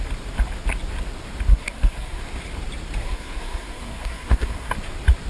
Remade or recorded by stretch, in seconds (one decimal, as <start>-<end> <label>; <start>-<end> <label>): 0.0-1.5 recorded; 1.5-2.2 remade; 2.2-3.0 recorded; 3.0-4.7 remade; 4.7-5.3 recorded